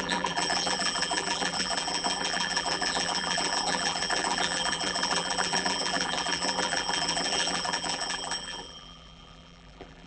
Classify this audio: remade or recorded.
remade